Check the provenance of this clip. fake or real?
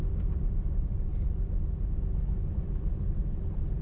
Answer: real